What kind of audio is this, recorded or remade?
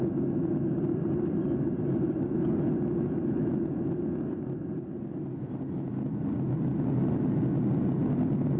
recorded